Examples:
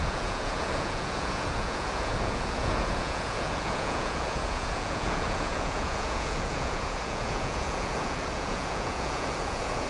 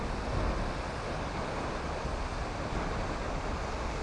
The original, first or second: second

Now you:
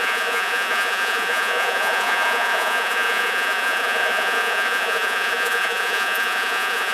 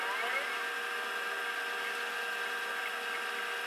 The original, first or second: second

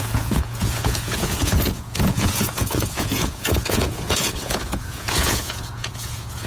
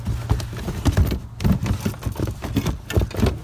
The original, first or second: second